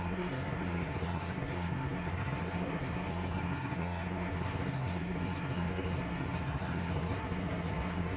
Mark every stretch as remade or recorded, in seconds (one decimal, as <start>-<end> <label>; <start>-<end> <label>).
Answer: 0.0-8.2 remade